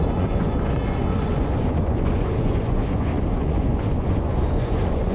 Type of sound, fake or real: fake